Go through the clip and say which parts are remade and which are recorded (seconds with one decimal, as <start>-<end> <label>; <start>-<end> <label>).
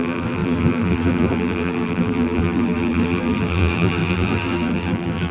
0.0-5.3 remade